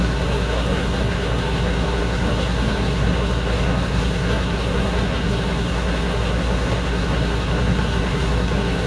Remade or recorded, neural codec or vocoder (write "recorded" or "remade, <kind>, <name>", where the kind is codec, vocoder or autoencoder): remade, codec, SNAC